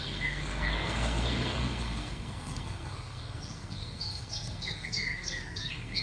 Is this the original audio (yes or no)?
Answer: no